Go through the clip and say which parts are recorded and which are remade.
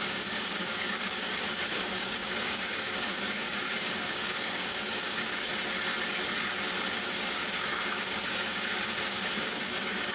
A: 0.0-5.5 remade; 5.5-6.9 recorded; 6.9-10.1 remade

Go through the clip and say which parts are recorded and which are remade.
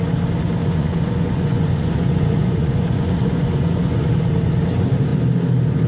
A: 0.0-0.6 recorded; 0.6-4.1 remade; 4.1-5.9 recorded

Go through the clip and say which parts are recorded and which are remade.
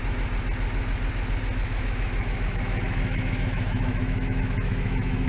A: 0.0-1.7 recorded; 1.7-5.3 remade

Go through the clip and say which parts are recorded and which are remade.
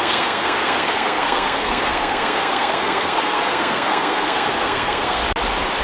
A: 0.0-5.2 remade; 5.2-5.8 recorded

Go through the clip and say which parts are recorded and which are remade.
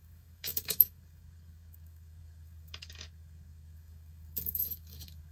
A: 0.0-5.3 remade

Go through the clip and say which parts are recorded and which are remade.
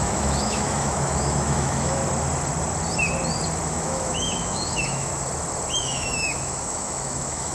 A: 0.0-2.0 remade; 2.0-3.7 recorded; 3.7-5.1 remade; 5.1-5.8 recorded; 5.8-7.5 remade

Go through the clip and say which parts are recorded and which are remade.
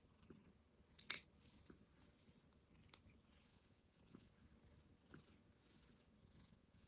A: 0.0-3.5 recorded; 3.5-4.3 remade; 4.3-6.2 recorded; 6.2-6.9 remade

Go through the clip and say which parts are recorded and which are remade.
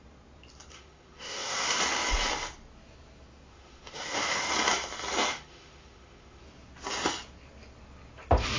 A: 0.0-0.7 recorded; 0.7-1.8 remade; 1.8-3.5 recorded; 3.5-4.5 remade; 4.5-5.3 recorded; 5.3-6.4 remade; 6.4-8.6 recorded